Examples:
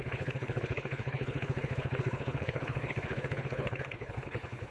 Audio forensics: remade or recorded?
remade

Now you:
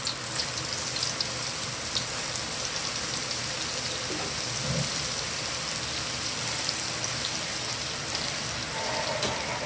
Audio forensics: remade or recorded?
recorded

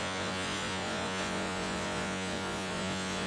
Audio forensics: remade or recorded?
remade